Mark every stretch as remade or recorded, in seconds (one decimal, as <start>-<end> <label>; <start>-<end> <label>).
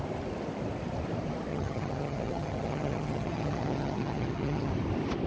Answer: 0.0-1.5 recorded; 1.5-4.7 remade; 4.7-5.3 recorded